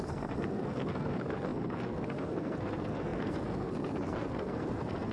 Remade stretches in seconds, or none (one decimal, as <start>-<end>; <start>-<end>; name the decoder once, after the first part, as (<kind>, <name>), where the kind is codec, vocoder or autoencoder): 0.0-5.1 (codec, SNAC)